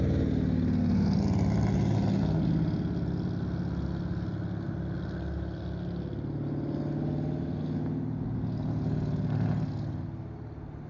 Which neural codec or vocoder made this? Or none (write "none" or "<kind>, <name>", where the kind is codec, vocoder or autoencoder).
none